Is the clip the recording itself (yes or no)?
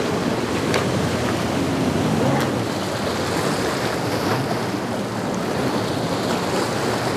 yes